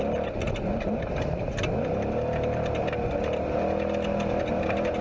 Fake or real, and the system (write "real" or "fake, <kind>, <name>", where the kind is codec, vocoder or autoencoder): real